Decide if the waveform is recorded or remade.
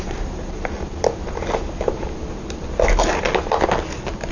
recorded